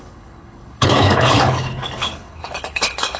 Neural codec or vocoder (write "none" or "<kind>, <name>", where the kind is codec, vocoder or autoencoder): codec, HILCodec